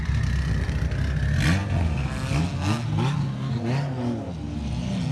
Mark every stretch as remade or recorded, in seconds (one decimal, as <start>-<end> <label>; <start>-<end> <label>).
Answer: 0.0-5.1 recorded